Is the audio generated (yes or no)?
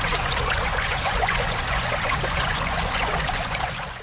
yes